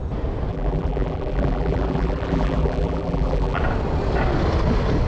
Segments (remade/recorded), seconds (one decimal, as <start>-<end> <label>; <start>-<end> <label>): 0.0-0.5 recorded; 0.5-3.6 remade; 3.6-5.1 recorded